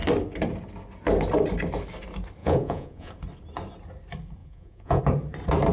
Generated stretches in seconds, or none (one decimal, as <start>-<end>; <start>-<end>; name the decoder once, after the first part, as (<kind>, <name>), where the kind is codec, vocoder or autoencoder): 2.4-3.1 (vocoder, Vocos); 4.4-5.0